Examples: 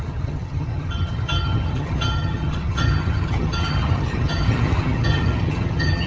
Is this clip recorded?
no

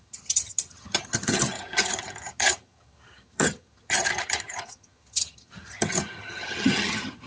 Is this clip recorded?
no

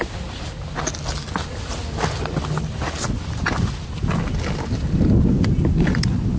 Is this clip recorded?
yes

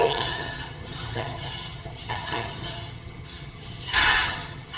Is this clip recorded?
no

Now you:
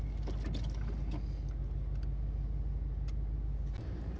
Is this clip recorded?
yes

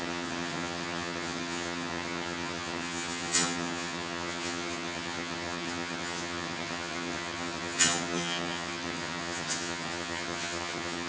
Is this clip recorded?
no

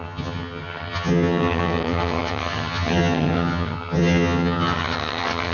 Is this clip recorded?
no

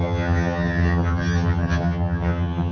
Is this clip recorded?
no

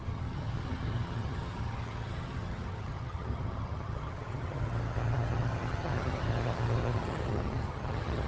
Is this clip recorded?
no